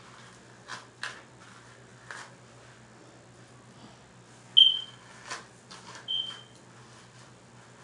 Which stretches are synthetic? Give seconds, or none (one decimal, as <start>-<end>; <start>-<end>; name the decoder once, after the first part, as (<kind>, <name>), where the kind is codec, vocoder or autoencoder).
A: none